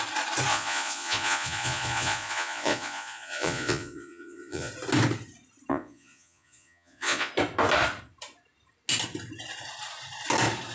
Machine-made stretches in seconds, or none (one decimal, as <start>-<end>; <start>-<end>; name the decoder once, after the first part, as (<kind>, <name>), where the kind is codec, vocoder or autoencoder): 0.5-4.7 (vocoder, Vocos); 5.7-7.3